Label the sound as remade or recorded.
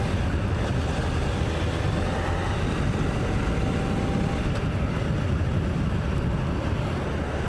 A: recorded